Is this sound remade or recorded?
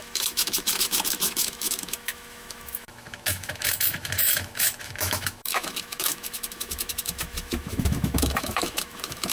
remade